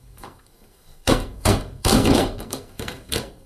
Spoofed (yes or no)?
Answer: yes